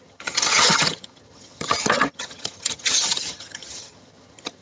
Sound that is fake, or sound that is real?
fake